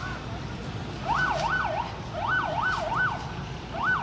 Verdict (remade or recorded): recorded